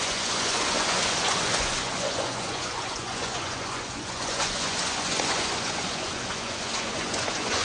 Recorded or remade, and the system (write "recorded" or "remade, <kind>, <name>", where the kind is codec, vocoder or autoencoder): remade, vocoder, Vocos